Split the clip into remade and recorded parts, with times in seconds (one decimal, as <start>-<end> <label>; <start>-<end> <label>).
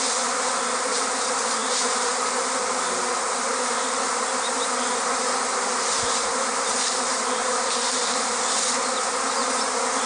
0.0-10.1 recorded